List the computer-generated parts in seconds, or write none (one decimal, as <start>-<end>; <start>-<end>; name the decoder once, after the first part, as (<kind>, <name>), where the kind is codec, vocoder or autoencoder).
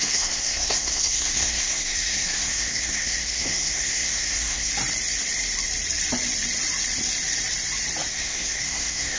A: 0.0-4.7 (codec, SNAC); 8.1-9.2